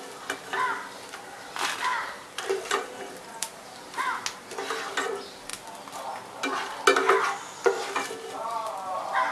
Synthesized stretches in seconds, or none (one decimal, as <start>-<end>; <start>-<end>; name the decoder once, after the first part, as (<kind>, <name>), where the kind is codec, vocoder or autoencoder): 1.9-4.2 (vocoder, BigVGAN v2)

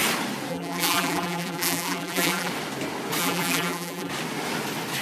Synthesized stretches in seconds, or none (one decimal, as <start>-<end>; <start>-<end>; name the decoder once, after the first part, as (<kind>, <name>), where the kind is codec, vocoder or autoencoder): 0.5-2.5 (vocoder, BigVGAN v2); 3.2-4.1

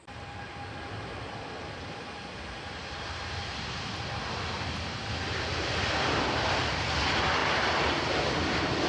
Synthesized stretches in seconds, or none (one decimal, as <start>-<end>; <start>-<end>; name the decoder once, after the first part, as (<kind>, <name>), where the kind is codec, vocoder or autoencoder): 7.4-8.1 (vocoder, BigVGAN v2)

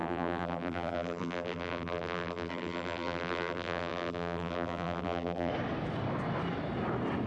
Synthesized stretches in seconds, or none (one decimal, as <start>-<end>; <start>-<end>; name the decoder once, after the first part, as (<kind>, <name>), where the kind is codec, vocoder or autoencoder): 0.0-5.5 (vocoder, BigVGAN v2)

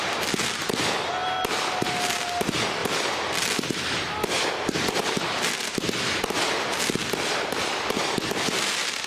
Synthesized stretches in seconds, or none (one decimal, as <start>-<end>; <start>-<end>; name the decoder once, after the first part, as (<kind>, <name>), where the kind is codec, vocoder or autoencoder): 1.2-2.2 (vocoder, BigVGAN v2); 2.8-3.8

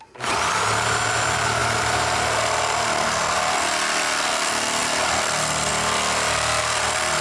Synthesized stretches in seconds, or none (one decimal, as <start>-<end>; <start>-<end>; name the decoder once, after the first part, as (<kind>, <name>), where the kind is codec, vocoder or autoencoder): none